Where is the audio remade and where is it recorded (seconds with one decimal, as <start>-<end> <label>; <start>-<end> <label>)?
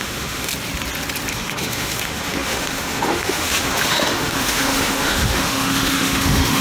0.0-0.5 remade; 0.5-1.3 recorded; 1.3-6.6 remade